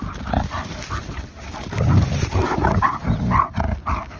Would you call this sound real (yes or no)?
yes